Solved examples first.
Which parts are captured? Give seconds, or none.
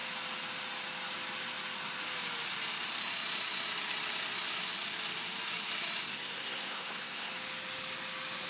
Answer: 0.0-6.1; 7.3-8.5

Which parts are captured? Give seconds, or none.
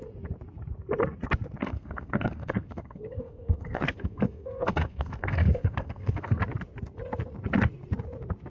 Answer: 0.0-1.6; 6.4-8.5